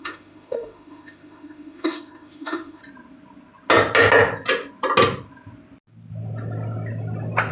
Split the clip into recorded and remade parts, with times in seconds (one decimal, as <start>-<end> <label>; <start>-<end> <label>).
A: 0.0-2.8 remade; 2.8-7.5 recorded